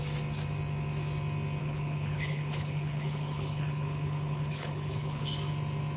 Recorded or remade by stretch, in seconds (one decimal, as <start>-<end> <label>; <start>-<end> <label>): 0.0-1.6 recorded; 1.6-5.2 remade; 5.2-6.0 recorded